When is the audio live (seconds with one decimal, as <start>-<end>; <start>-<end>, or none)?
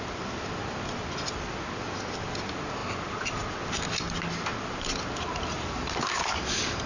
0.0-6.9